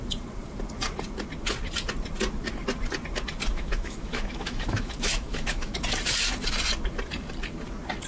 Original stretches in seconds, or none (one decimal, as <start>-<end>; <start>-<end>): 0.0-3.5; 5.7-8.1